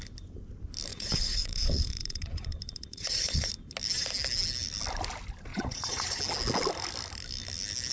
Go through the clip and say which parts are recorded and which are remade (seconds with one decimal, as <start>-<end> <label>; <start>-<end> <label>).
0.0-0.9 recorded; 0.9-3.5 remade; 3.5-5.5 recorded; 5.5-6.2 remade; 6.2-7.9 recorded